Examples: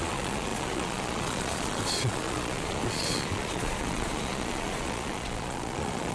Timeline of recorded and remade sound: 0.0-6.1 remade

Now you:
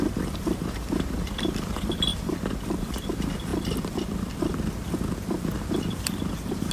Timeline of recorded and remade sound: 0.0-3.5 remade; 3.5-5.9 recorded; 5.9-6.7 remade

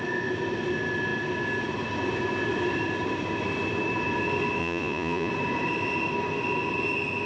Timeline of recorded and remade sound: 0.0-4.6 recorded; 4.6-5.3 remade; 5.3-7.3 recorded